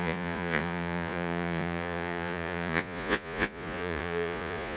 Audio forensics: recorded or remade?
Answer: remade